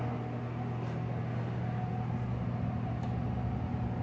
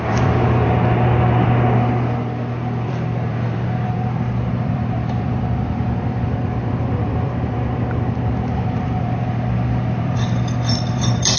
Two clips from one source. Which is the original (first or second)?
first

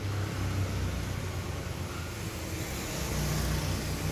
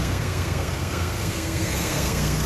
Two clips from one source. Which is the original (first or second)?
first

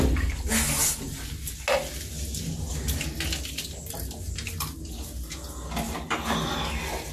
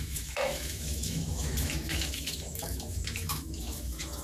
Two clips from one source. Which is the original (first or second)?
first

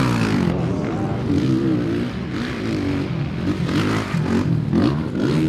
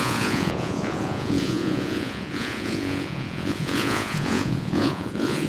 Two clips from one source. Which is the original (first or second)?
first